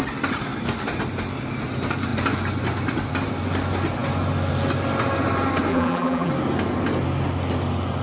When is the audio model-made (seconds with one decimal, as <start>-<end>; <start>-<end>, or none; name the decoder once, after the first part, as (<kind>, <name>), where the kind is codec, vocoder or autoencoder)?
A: 5.7-6.3 (vocoder, BigVGAN v2)

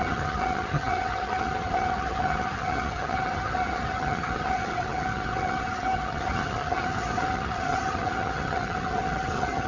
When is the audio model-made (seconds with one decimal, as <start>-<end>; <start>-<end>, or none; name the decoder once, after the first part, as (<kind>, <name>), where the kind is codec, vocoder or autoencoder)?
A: 0.0-9.7 (vocoder, HiFi-GAN)

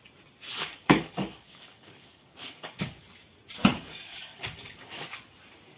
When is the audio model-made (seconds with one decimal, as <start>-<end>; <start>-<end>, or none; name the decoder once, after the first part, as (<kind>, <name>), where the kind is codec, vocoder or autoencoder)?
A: 0.5-3.0 (codec, DAC); 3.7-5.2